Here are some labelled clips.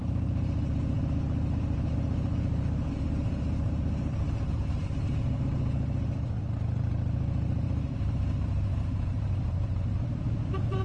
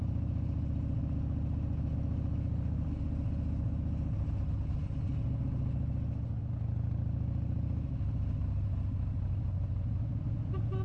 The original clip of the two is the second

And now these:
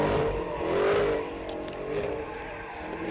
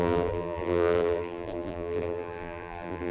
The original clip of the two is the first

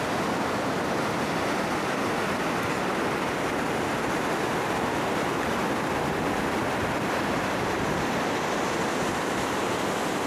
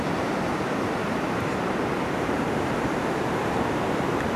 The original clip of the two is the first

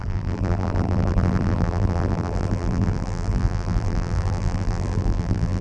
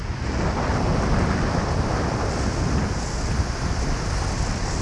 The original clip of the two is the second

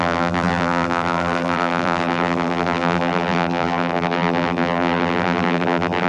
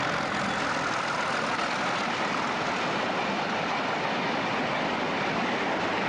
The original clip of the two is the second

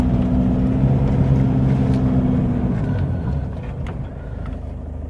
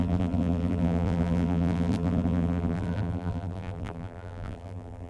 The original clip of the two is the first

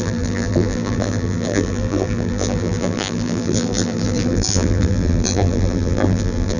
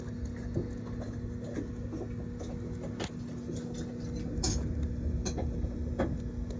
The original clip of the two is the second